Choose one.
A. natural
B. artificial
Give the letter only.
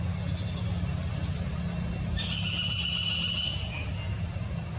A